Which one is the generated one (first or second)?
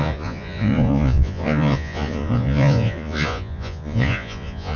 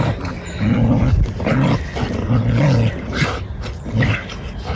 first